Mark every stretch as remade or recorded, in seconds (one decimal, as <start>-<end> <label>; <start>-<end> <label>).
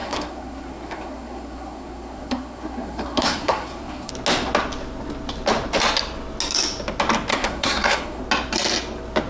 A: 0.0-4.1 remade; 4.1-7.3 recorded; 7.3-8.2 remade; 8.2-9.3 recorded